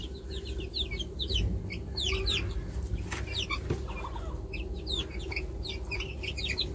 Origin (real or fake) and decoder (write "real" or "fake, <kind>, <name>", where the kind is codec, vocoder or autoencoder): real